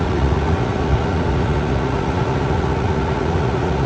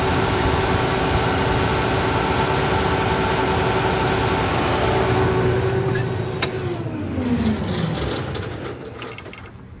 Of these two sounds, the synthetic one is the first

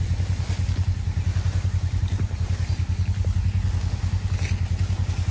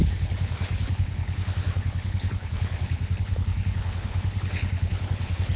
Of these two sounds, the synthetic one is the second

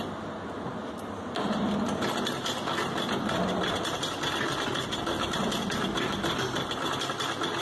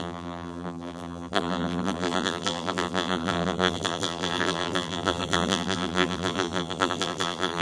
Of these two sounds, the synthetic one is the second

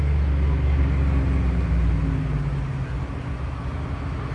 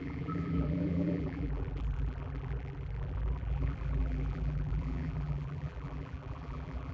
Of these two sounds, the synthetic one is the second